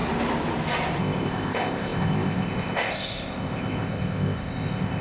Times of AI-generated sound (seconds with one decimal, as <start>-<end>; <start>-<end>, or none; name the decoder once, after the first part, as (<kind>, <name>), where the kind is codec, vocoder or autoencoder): 1.0-5.0 (codec, ZipCodec)